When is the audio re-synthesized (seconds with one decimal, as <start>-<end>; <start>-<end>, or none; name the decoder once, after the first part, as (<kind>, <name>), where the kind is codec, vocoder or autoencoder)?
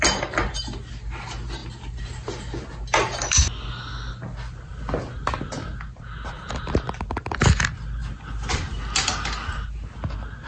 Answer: none